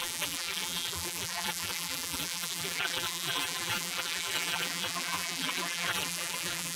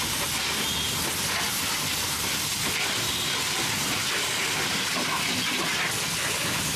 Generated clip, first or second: first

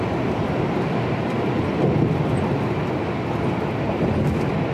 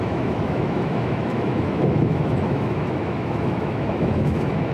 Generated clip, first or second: second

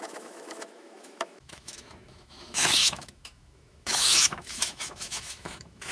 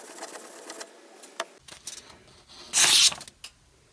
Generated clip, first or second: first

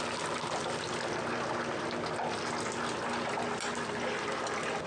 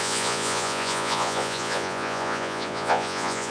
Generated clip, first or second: second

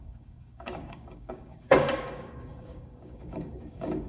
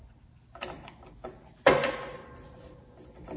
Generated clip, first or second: first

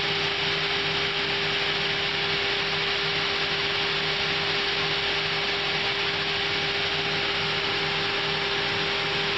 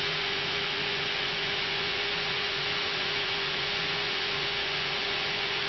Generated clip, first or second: second